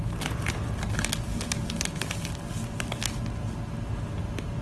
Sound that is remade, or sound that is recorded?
recorded